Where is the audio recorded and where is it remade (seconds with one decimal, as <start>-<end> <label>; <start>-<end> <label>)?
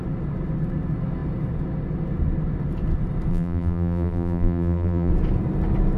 0.0-3.3 recorded; 3.3-5.1 remade; 5.1-6.0 recorded